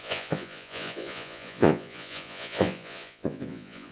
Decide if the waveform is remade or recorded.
remade